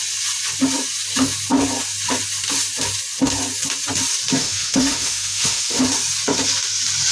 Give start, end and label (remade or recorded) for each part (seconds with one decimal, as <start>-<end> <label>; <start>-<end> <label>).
0.0-4.4 recorded; 4.4-5.8 remade; 5.8-7.1 recorded